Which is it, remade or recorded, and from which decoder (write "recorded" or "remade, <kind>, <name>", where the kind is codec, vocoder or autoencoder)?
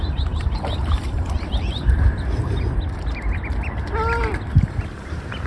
remade, vocoder, BigVGAN v2